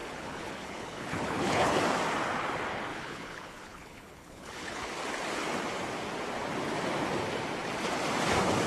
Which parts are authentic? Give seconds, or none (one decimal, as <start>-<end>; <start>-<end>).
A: 1.8-2.9; 4.9-8.7